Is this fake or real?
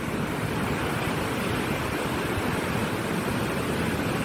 real